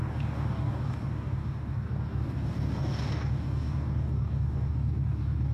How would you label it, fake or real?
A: fake